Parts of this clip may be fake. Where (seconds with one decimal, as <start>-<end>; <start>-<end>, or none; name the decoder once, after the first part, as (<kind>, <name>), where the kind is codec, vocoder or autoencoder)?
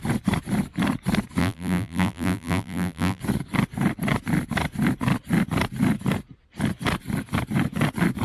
1.4-3.2 (vocoder, BigVGAN v2)